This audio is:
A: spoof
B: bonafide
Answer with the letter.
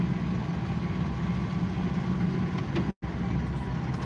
B